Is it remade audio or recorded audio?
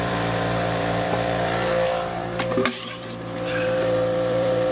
remade